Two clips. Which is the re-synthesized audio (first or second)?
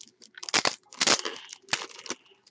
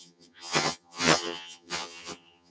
second